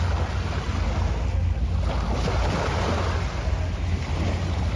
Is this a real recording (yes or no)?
yes